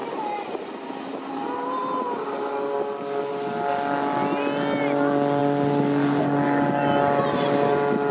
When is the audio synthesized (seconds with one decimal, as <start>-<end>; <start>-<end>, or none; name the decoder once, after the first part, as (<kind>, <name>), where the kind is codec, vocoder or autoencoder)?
none